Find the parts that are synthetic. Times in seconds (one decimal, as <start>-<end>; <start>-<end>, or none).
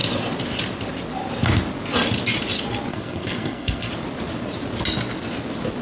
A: 2.9-3.9